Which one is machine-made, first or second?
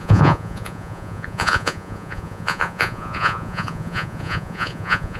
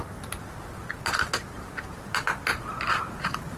first